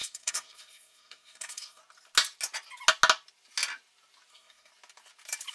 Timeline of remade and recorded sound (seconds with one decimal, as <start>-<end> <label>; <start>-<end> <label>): 0.0-1.8 remade; 1.8-4.3 recorded; 4.3-4.7 remade; 4.7-5.5 recorded